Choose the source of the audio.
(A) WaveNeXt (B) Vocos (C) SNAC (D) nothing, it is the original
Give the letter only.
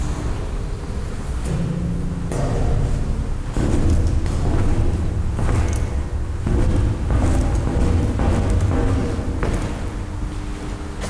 D